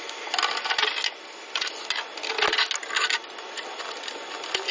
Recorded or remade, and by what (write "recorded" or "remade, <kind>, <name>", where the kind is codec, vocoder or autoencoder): recorded